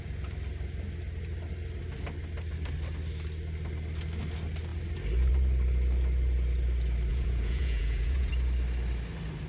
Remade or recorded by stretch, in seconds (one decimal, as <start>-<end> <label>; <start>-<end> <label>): 0.0-7.1 recorded; 7.1-8.3 remade; 8.3-9.5 recorded